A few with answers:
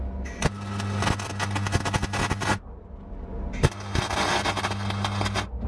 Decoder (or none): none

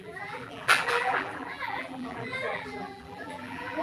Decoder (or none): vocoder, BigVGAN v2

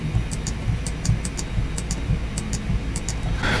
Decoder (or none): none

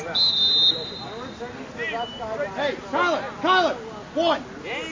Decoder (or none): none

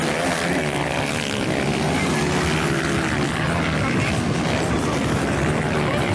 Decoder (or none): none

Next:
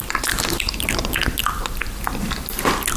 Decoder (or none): none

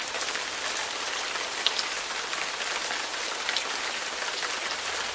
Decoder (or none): none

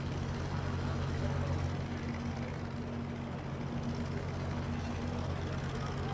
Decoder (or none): none